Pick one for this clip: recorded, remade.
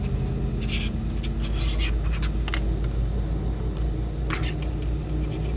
recorded